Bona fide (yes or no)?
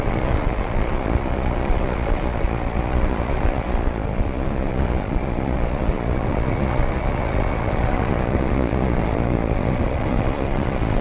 no